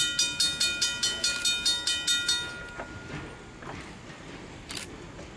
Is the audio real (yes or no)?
yes